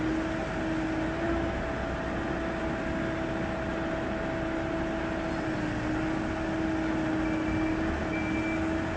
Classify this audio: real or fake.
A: real